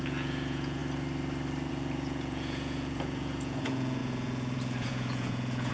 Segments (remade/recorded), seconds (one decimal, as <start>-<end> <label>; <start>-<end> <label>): 0.0-0.8 remade; 0.8-1.7 recorded; 1.7-5.7 remade